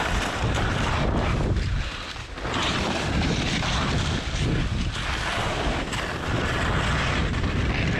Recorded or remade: recorded